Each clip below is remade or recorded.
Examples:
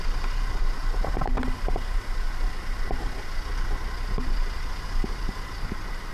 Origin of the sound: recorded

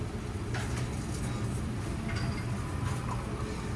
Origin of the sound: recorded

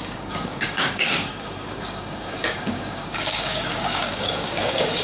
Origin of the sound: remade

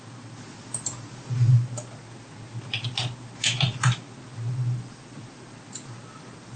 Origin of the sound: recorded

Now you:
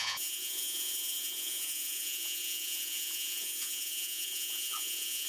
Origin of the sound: remade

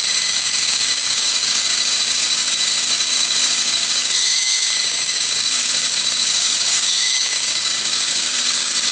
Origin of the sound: remade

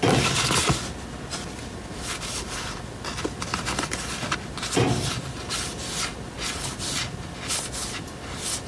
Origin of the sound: recorded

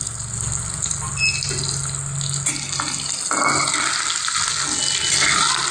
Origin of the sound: recorded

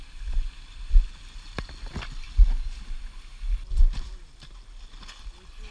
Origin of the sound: recorded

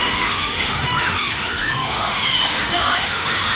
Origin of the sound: remade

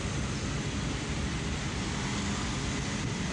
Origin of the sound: recorded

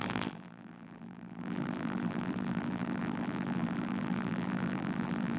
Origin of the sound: remade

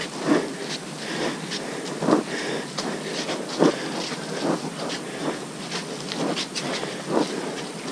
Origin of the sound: recorded